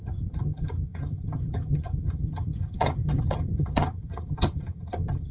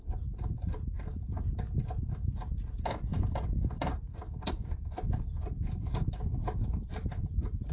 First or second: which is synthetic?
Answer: first